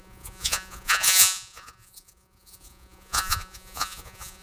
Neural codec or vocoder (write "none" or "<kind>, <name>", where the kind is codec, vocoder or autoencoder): vocoder, Vocos